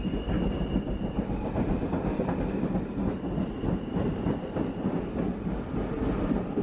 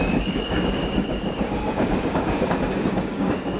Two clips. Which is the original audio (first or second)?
first